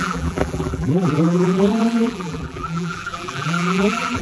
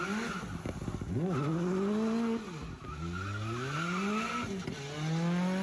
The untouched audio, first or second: second